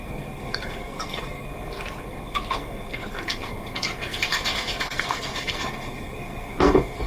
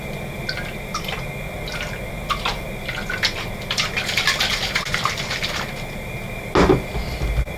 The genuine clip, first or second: second